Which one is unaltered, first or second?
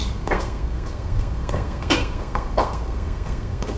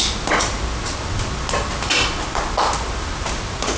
second